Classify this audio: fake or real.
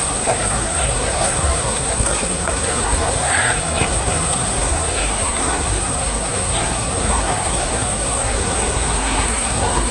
fake